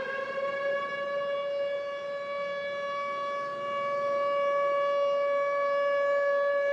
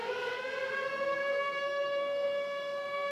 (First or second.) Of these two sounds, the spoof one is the second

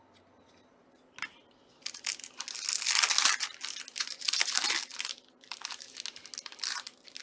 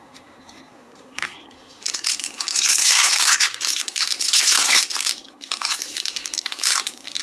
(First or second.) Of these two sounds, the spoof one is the second